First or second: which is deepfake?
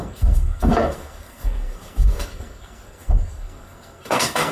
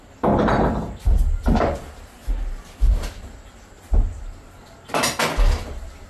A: first